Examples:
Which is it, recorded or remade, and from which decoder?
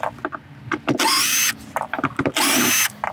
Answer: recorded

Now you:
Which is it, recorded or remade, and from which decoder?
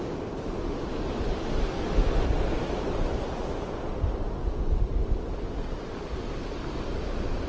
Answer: recorded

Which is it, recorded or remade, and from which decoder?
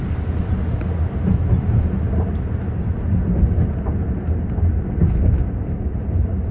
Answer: recorded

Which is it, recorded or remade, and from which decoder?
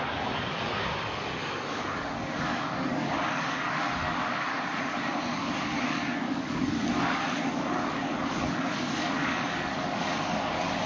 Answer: remade, codec, DAC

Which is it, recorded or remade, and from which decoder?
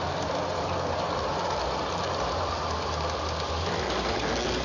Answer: recorded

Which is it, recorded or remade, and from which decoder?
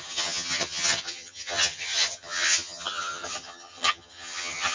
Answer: remade, vocoder, HiFi-GAN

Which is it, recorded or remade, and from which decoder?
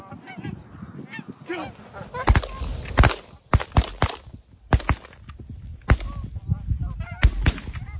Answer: recorded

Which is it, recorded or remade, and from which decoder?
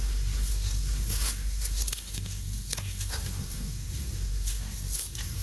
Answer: remade, codec, SNAC